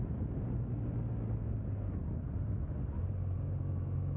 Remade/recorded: recorded